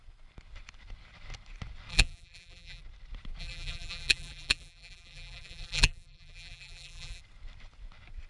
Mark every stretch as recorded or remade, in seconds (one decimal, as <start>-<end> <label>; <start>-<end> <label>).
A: 0.0-1.9 recorded; 1.9-2.8 remade; 2.8-3.4 recorded; 3.4-7.2 remade; 7.2-8.3 recorded